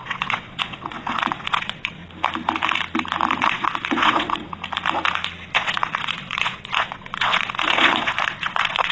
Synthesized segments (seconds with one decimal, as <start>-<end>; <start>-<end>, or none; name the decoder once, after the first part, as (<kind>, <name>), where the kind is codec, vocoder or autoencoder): 0.0-2.0 (vocoder, WaveNeXt); 3.4-4.5; 5.5-8.9